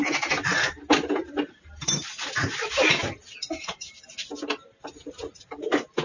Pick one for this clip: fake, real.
real